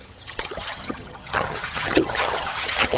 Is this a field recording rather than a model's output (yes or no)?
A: no